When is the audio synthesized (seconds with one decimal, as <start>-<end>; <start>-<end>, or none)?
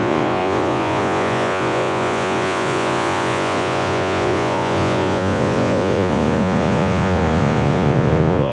0.0-8.5